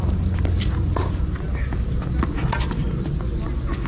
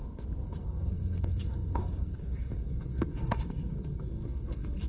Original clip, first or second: first